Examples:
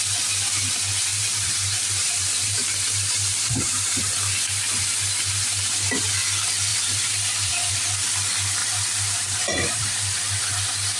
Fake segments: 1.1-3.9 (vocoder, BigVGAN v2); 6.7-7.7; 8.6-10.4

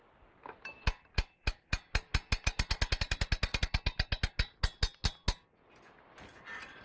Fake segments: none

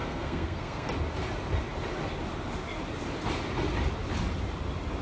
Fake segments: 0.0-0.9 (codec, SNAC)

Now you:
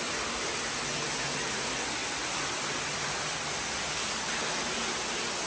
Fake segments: none

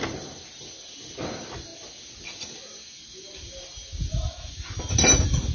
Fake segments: none

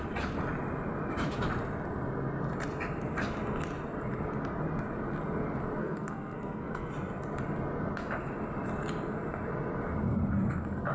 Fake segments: 5.8-6.9 (codec, SNAC)